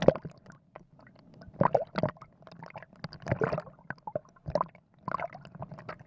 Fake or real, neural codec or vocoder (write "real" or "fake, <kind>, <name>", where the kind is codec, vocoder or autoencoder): real